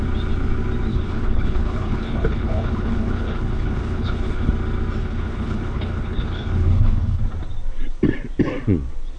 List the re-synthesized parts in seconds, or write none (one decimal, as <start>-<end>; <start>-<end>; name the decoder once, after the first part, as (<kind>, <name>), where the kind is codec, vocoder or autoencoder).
0.9-4.5 (codec, HILCodec); 5.0-7.2